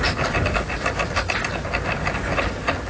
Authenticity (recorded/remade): recorded